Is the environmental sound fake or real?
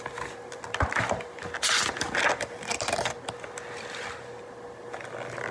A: real